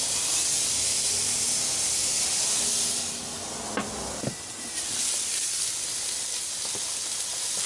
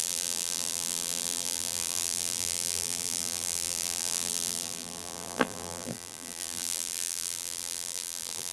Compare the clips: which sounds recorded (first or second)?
first